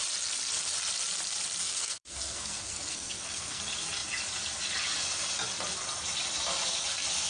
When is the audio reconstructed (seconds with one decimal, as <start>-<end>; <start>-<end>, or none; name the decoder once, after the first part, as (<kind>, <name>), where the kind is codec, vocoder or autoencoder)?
1.6-3.6 (codec, SNAC)